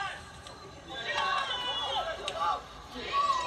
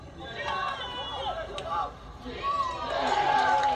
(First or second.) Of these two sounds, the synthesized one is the first